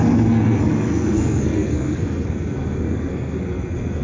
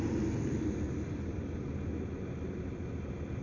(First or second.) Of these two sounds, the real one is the second